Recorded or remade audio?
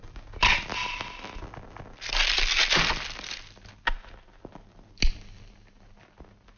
recorded